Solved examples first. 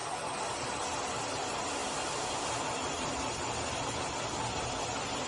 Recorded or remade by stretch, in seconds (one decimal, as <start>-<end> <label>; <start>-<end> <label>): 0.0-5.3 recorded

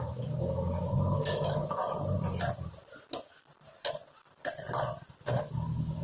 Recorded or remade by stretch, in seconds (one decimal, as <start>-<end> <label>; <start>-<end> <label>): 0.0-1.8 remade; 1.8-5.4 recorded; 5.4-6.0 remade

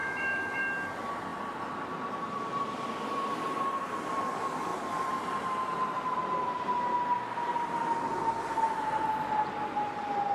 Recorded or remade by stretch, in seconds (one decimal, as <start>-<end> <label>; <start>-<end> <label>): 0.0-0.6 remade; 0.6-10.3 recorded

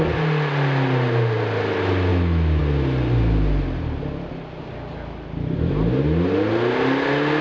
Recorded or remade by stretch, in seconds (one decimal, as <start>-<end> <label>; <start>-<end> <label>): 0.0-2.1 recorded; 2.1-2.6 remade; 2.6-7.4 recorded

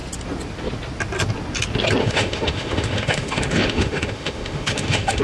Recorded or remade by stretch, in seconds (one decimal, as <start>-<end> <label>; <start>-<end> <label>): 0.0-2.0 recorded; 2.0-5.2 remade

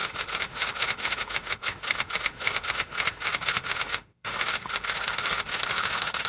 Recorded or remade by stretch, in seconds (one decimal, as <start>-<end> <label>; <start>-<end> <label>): 0.0-6.3 remade